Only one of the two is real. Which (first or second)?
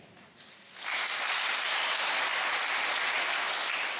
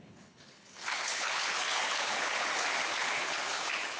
first